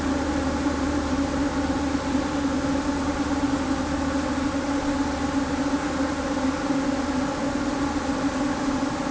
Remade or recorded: recorded